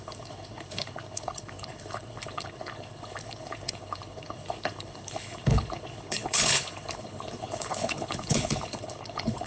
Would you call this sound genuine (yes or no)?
no